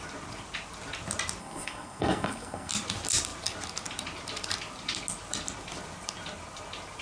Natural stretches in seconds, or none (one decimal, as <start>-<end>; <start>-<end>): 0.0-1.4; 2.7-7.0